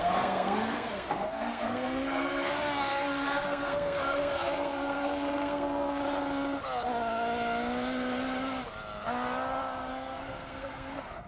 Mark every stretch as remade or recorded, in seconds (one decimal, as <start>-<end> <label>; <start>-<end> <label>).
0.0-6.0 remade; 6.0-9.9 recorded; 9.9-11.3 remade